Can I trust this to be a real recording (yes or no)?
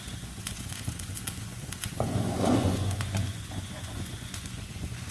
no